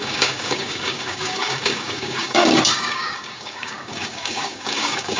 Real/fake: fake